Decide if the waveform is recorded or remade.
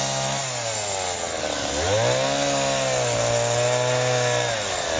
recorded